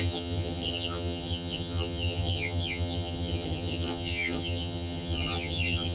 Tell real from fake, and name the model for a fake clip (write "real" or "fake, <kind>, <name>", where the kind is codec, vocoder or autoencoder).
fake, vocoder, HiFi-GAN